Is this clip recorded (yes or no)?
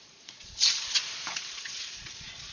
no